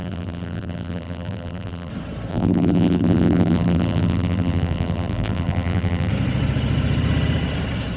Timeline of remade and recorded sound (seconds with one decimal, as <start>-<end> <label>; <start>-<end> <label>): 0.0-1.9 remade; 1.9-2.3 recorded; 2.3-6.1 remade; 6.1-8.0 recorded